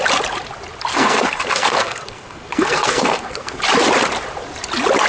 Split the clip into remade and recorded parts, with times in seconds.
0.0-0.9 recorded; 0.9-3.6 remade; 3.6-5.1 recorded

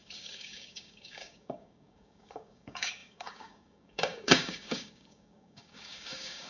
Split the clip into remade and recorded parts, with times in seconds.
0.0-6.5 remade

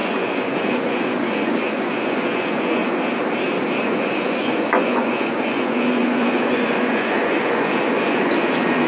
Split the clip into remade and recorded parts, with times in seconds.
0.0-2.8 remade; 2.8-3.8 recorded; 3.8-8.9 remade